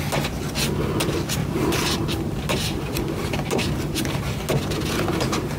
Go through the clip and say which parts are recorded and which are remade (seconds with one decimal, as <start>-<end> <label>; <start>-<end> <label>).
0.0-1.4 recorded; 1.4-4.2 remade; 4.2-5.6 recorded